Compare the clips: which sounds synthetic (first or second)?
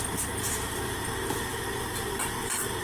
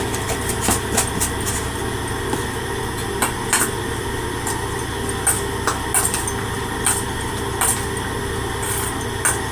first